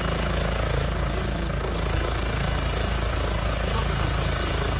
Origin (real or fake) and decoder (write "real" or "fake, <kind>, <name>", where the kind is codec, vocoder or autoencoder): real